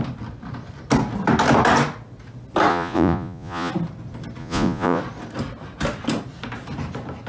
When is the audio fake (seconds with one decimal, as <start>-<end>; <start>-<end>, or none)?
2.7-3.7; 4.4-5.0